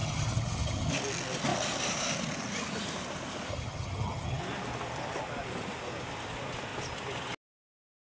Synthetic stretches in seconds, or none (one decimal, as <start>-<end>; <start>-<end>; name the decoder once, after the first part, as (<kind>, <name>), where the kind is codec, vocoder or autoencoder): 0.0-0.9 (vocoder, HiFi-GAN); 3.5-4.4